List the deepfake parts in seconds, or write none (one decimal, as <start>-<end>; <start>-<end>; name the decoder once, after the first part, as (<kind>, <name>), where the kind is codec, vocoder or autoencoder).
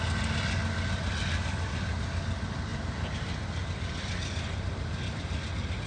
none